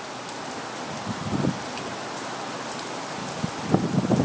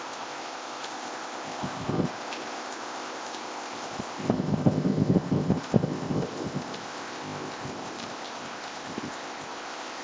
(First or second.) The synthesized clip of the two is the second